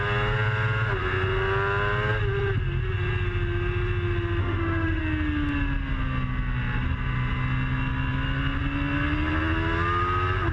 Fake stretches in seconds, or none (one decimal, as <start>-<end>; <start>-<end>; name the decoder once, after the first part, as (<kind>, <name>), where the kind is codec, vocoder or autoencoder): 4.4-5.0 (autoencoder, DAC-VAE)